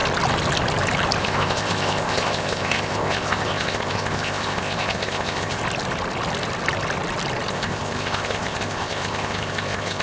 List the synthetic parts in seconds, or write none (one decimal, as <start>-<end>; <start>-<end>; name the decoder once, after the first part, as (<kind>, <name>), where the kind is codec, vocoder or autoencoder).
1.2-5.6 (codec, ZipCodec); 7.5-10.0